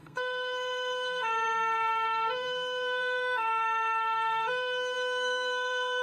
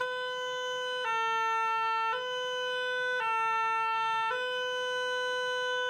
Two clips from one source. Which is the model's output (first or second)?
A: first